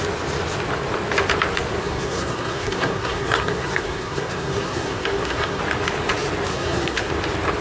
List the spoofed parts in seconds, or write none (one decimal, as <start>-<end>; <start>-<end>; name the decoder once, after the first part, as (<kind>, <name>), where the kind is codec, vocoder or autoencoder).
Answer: 1.8-5.6 (codec, SNAC); 6.5-7.1